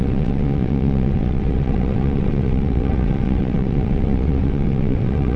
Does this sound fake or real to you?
fake